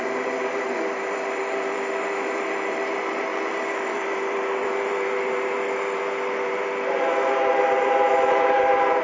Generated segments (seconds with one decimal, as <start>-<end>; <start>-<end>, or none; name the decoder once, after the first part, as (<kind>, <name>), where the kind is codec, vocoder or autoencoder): 0.0-9.0 (vocoder, BigVGAN v2)

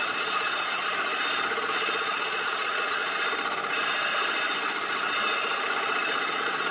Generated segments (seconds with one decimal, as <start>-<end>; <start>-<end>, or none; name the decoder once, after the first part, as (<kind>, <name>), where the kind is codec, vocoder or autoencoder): 0.0-0.8 (vocoder, Vocos); 1.6-3.0; 6.3-6.7

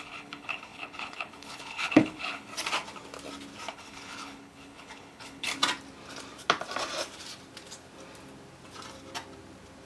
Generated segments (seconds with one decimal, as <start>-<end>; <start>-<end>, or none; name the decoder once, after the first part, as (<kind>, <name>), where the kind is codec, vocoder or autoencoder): 0.0-2.5 (codec, HILCodec); 3.7-5.5

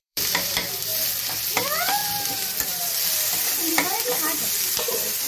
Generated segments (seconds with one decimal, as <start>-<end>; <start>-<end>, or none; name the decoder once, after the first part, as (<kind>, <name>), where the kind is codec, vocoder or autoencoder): 0.0-0.9 (vocoder, BigVGAN v2); 1.5-5.3

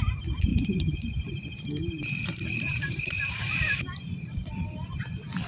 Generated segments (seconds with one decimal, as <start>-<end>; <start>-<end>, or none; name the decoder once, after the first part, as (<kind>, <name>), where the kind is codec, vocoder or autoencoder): 0.5-3.8 (vocoder, BigVGAN v2)

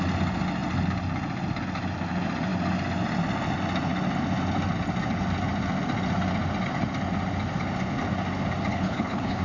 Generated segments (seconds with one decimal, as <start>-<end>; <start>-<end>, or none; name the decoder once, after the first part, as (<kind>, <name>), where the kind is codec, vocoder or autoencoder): 8.7-9.4 (codec, HILCodec)

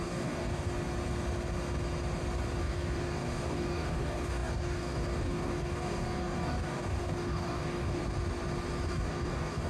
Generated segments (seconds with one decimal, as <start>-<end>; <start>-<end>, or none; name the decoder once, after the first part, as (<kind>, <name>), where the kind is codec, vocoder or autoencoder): 0.0-0.7 (codec, DAC); 2.6-8.0; 8.9-9.7